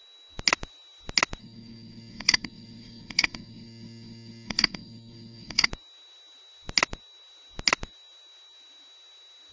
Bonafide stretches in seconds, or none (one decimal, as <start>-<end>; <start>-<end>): 0.0-1.4; 5.7-9.5

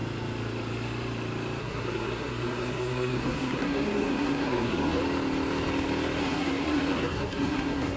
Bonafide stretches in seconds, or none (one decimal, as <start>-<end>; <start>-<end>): 0.0-1.6; 5.0-6.2

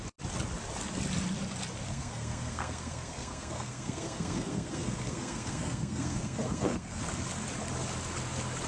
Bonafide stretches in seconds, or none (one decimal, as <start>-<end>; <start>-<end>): 0.0-1.9; 7.0-8.7

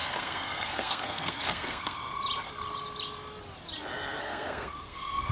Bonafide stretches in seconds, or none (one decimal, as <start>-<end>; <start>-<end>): 2.0-4.2

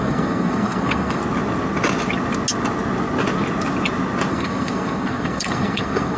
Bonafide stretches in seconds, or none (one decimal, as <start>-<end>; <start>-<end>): 1.2-4.3

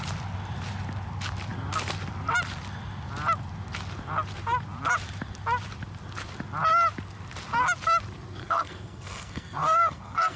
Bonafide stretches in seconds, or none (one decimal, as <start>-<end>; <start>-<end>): 0.0-8.4

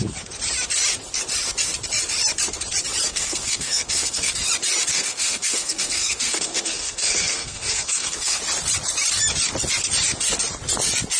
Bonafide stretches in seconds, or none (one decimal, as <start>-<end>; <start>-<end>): 0.0-3.1; 4.3-4.9; 8.4-11.2